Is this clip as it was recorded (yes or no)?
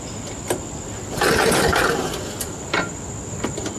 yes